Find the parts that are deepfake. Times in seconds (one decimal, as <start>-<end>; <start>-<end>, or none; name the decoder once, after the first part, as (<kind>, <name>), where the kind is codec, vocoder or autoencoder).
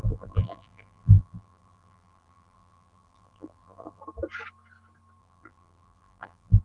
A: 0.0-4.0 (vocoder, BigVGAN v2); 5.2-6.6